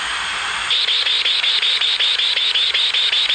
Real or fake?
real